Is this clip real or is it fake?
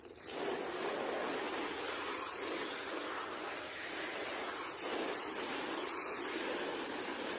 real